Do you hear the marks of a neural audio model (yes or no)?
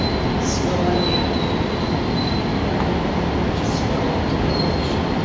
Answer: no